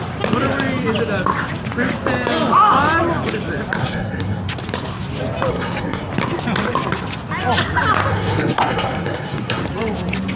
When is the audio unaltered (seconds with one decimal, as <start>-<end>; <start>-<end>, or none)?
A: 0.0-3.8; 4.4-5.5; 6.1-8.1; 9.6-10.4